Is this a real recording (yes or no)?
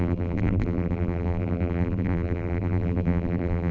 no